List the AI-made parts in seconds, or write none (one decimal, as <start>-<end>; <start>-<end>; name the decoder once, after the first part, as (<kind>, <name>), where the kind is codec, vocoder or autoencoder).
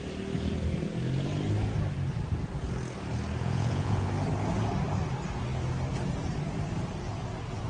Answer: 3.4-4.1 (vocoder, Vocos)